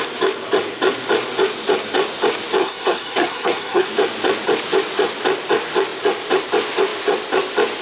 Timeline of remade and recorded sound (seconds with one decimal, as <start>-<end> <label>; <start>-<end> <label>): 0.0-2.6 recorded; 2.6-3.9 remade; 3.9-7.8 recorded